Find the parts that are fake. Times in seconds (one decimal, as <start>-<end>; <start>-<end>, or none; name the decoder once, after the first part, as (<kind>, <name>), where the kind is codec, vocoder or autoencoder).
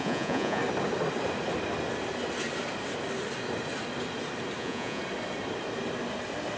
0.0-0.6 (vocoder, Vocos); 4.6-5.0